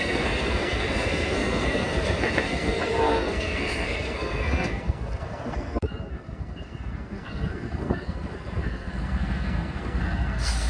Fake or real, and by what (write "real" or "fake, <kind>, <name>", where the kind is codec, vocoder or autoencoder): fake, codec, SNAC